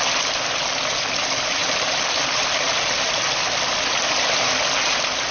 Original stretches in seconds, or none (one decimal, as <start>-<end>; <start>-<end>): 0.0-5.3